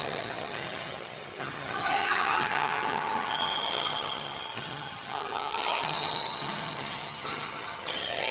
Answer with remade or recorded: remade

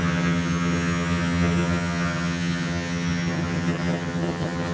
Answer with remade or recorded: remade